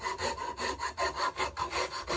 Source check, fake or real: real